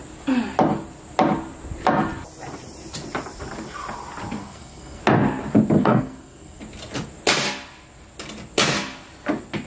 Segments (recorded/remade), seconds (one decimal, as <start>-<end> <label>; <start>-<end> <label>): 0.0-4.4 recorded; 4.4-5.0 remade; 5.0-5.8 recorded; 5.8-6.6 remade; 6.6-9.7 recorded